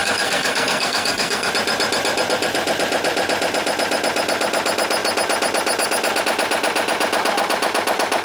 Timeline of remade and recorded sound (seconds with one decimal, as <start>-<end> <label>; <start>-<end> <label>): 0.0-1.5 remade; 1.5-8.2 recorded